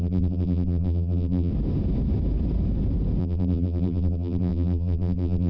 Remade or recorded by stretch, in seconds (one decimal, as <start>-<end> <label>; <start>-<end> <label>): 0.0-1.5 remade; 1.5-3.2 recorded; 3.2-5.5 remade